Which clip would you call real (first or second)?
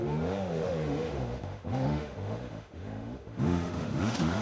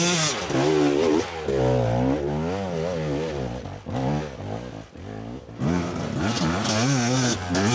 second